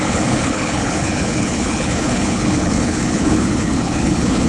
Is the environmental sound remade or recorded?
remade